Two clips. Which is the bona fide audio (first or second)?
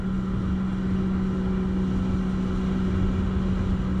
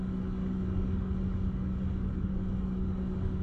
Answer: first